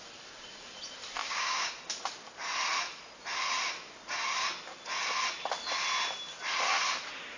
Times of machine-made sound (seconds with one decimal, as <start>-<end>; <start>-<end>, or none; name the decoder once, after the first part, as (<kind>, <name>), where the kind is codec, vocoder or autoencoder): 1.2-1.7 (codec, DAC)